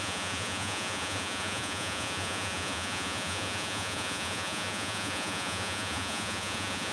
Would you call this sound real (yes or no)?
no